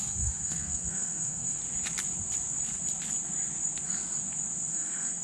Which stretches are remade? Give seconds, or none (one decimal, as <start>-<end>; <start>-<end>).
0.0-1.6; 4.7-5.2